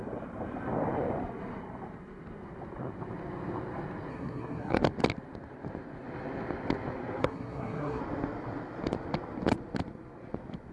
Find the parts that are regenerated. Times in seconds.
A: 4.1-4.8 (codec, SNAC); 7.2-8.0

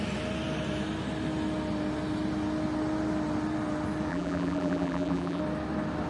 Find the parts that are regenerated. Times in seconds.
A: 4.1-5.4 (vocoder, BigVGAN v2)

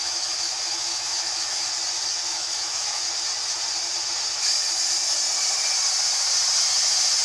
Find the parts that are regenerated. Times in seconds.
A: 0.0-1.7 (autoencoder, DAC-VAE); 2.3-3.0

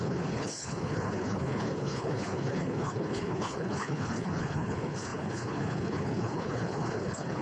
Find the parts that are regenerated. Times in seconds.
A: 0.0-7.4 (codec, HILCodec)

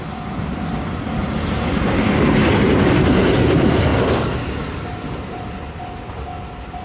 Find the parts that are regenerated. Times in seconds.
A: 1.2-1.9 (vocoder, BigVGAN v2)